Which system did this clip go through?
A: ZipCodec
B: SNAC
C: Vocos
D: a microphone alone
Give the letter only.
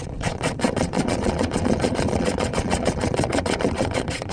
C